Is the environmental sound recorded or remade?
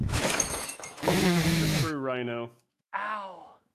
remade